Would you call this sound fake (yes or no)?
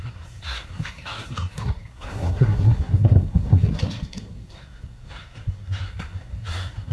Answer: yes